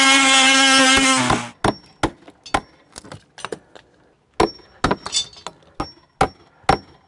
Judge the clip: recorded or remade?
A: recorded